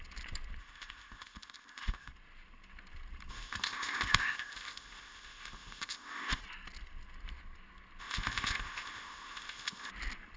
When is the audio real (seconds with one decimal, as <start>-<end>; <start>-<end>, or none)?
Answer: 0.0-0.6; 2.1-3.3; 6.4-8.0; 9.9-10.4